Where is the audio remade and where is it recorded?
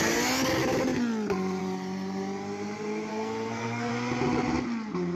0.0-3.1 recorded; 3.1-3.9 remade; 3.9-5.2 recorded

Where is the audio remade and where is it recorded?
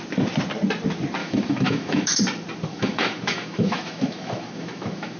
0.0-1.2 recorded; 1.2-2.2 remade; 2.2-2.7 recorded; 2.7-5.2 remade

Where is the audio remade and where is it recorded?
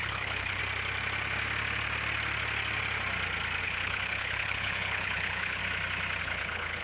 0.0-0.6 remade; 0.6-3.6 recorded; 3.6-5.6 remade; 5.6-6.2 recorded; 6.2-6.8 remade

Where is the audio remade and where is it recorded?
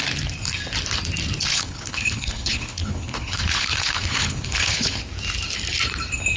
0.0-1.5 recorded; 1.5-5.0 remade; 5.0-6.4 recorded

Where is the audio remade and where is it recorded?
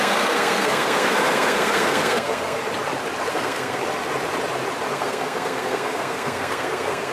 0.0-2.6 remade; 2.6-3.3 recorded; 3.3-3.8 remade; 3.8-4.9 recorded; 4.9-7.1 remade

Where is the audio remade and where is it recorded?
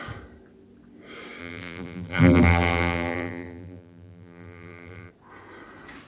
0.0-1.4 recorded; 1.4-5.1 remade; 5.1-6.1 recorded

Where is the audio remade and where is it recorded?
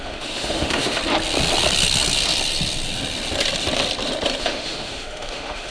0.0-1.0 remade; 1.0-4.4 recorded; 4.4-5.7 remade